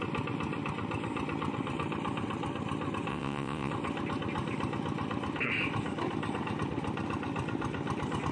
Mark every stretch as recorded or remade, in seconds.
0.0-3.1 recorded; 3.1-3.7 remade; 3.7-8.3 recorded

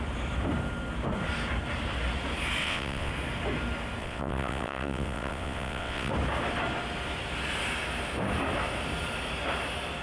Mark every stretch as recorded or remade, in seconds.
0.0-2.6 recorded; 2.6-3.1 remade; 3.1-4.0 recorded; 4.0-6.1 remade; 6.1-10.0 recorded

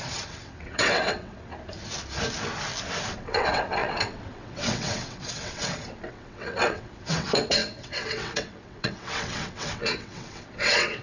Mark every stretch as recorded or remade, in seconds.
0.0-1.5 remade; 1.5-3.1 recorded; 3.1-11.0 remade

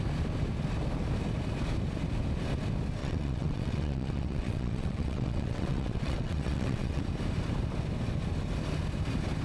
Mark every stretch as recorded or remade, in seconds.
0.0-3.0 recorded; 3.0-7.0 remade; 7.0-9.4 recorded

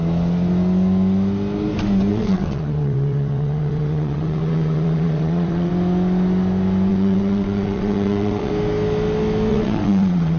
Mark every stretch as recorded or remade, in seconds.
0.0-2.1 recorded; 2.1-5.7 remade; 5.7-6.9 recorded; 6.9-8.5 remade; 8.5-9.5 recorded; 9.5-10.4 remade